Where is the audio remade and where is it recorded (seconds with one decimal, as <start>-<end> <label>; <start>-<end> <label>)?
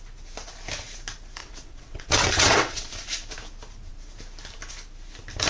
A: 0.0-1.4 recorded; 1.4-2.9 remade; 2.9-5.5 recorded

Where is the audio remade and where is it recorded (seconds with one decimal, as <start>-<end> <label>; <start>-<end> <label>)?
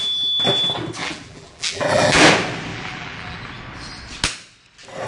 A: 0.0-1.0 recorded; 1.0-2.2 remade; 2.2-2.7 recorded; 2.7-3.4 remade; 3.4-5.1 recorded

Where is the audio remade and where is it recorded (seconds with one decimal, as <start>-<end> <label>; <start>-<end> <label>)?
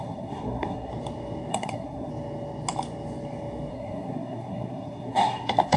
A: 0.0-0.9 remade; 0.9-1.5 recorded; 1.5-2.1 remade; 2.1-3.7 recorded; 3.7-5.8 remade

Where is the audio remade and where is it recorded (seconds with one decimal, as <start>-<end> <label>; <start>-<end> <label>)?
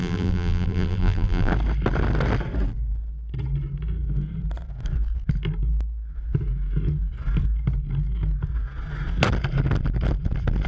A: 0.0-1.5 remade; 1.5-10.7 recorded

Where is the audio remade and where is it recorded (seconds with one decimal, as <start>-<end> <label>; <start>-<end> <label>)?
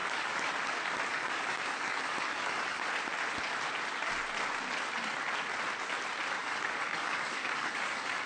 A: 0.0-0.5 remade; 0.5-1.1 recorded; 1.1-2.8 remade; 2.8-6.4 recorded; 6.4-8.3 remade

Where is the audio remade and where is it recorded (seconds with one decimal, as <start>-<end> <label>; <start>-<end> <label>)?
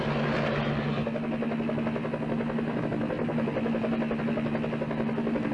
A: 0.0-5.5 recorded